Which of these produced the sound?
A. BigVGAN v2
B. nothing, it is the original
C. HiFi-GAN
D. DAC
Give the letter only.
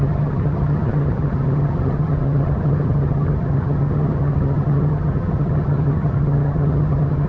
C